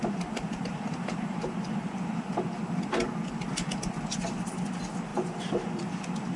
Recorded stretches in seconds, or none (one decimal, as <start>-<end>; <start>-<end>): 2.2-5.1; 5.9-6.4